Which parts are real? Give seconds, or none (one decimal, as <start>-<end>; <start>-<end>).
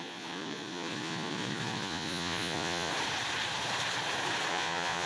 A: 2.9-4.5